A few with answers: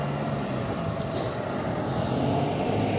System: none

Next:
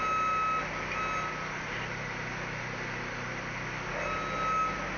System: none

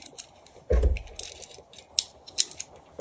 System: none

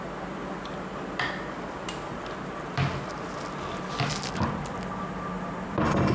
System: vocoder, BigVGAN v2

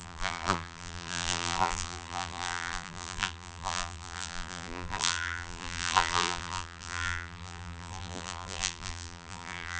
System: vocoder, BigVGAN v2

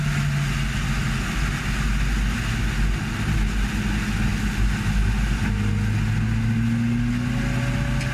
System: none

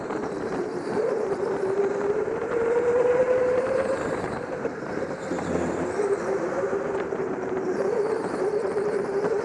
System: vocoder, BigVGAN v2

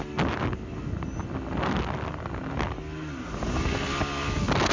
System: none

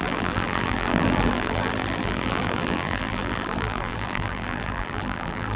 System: vocoder, BigVGAN v2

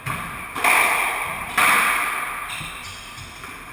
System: none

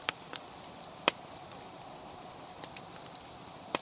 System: vocoder, BigVGAN v2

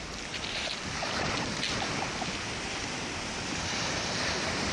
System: none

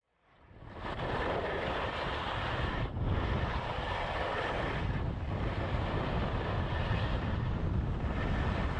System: vocoder, BigVGAN v2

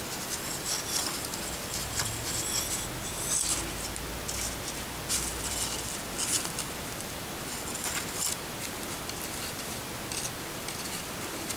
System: none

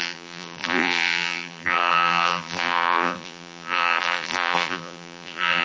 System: vocoder, BigVGAN v2